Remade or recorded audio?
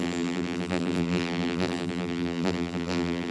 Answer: remade